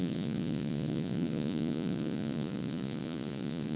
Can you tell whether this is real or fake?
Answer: fake